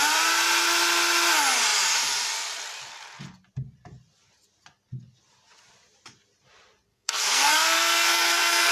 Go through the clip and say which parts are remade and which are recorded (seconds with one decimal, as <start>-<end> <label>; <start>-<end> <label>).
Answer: 0.0-6.9 recorded; 6.9-8.7 remade